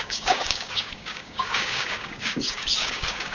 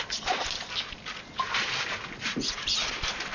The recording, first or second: second